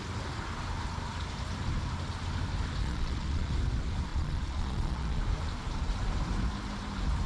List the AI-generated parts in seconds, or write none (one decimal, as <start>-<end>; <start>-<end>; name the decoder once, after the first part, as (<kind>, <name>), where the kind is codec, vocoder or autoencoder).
2.8-3.5 (vocoder, Vocos); 4.1-5.2